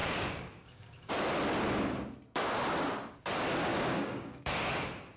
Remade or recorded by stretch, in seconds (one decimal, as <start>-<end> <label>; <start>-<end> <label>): 0.0-1.1 remade; 1.1-3.7 recorded; 3.7-4.5 remade; 4.5-5.2 recorded

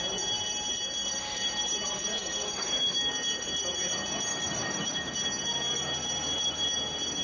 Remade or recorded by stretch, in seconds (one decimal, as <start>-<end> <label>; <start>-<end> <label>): 0.0-2.2 recorded; 2.2-3.1 remade; 3.1-4.3 recorded; 4.3-5.1 remade; 5.1-7.2 recorded

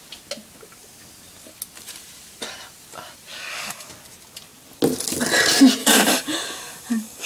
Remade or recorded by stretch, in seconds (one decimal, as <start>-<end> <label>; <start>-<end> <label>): 0.0-3.3 recorded; 3.3-3.9 remade; 3.9-5.8 recorded; 5.8-7.3 remade

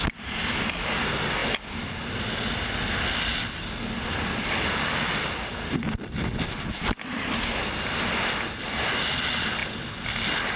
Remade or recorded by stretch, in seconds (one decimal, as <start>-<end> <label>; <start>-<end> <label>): 0.0-10.6 recorded

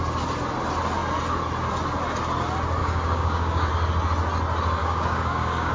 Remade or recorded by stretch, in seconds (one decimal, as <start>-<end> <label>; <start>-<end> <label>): 0.0-2.8 recorded; 2.8-3.7 remade; 3.7-4.8 recorded; 4.8-5.7 remade